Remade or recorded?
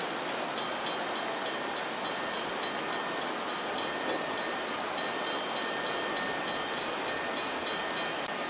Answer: recorded